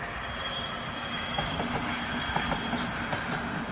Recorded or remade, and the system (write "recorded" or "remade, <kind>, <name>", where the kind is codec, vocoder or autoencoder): recorded